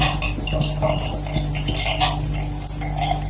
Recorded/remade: recorded